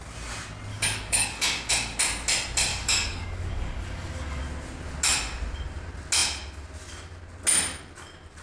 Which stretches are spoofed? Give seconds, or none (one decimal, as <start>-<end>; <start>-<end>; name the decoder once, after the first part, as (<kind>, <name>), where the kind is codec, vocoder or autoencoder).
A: 0.7-1.7 (codec, DAC); 2.7-4.4